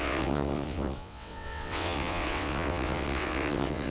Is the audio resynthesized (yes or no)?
yes